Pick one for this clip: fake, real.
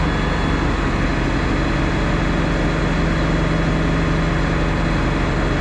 real